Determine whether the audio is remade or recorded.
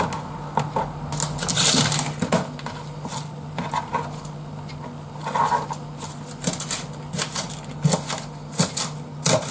recorded